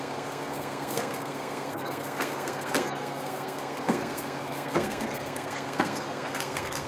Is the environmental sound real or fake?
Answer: fake